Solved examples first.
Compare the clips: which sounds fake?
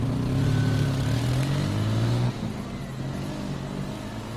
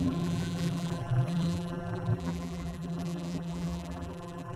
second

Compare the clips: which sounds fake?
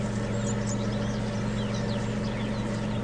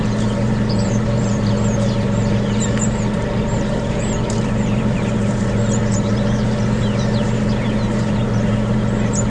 second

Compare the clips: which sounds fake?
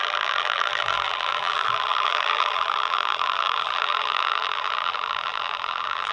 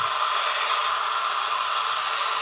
first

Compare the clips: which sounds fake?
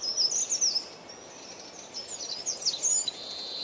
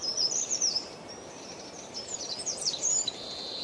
second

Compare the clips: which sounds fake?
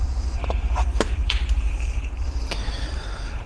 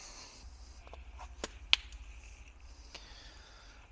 first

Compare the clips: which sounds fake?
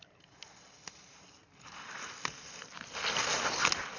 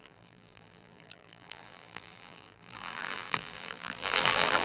second